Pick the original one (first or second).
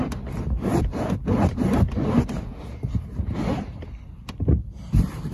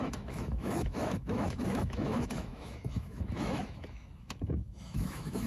first